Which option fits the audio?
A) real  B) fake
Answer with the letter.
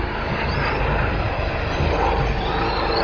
A